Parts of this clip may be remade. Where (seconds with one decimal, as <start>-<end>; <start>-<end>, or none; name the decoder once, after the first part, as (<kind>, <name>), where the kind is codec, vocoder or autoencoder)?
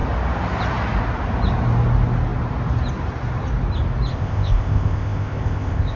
4.1-6.0 (codec, ZipCodec)